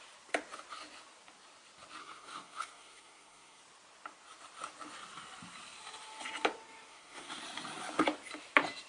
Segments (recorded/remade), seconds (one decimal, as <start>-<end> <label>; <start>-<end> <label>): 0.0-2.0 recorded; 2.0-3.6 remade; 3.6-6.9 recorded; 6.9-7.4 remade; 7.4-8.9 recorded